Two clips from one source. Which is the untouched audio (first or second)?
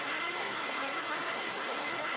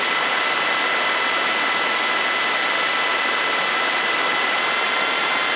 second